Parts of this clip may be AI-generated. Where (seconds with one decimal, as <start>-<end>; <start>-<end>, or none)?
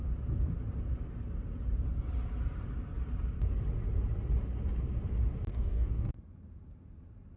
5.5-6.1